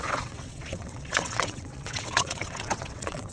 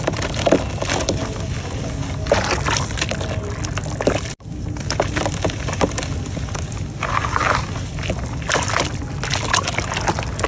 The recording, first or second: second